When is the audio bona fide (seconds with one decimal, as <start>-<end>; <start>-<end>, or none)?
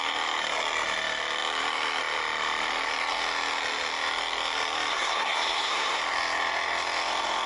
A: 0.0-4.9; 6.0-7.5